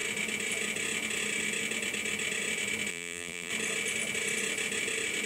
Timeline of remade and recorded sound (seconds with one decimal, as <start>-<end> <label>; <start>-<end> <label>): 0.0-2.9 recorded; 2.9-3.5 remade; 3.5-5.3 recorded